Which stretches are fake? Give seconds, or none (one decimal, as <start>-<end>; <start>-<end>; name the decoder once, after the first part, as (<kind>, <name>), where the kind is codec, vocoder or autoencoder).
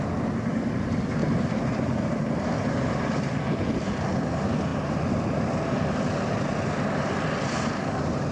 1.2-2.9 (vocoder, BigVGAN v2)